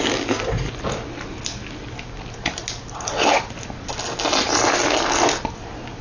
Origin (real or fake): real